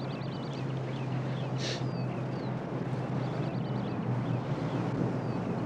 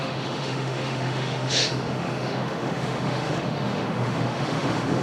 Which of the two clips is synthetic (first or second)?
second